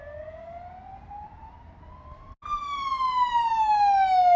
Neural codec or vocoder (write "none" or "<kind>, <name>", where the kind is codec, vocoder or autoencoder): none